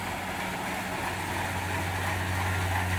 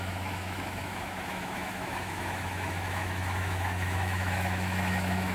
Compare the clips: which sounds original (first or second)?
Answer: first